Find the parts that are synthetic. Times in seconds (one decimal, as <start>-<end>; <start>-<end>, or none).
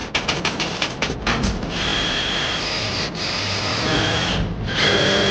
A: 3.7-4.3